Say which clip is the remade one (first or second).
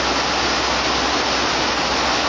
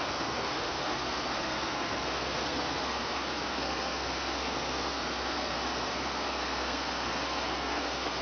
second